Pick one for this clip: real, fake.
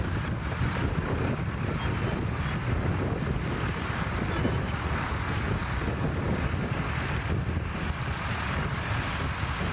real